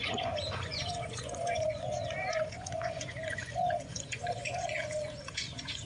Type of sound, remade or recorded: remade